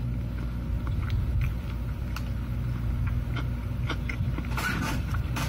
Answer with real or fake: real